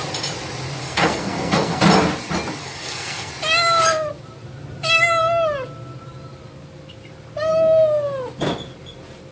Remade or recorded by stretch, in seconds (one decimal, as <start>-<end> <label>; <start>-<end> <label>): 0.0-0.8 recorded; 0.8-1.8 remade; 1.8-2.6 recorded; 2.6-3.3 remade; 3.3-9.3 recorded